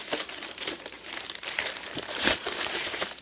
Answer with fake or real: fake